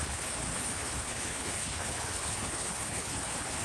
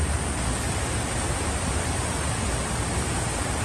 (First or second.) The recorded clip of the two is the second